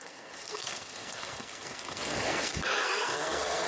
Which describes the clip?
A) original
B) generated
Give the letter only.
B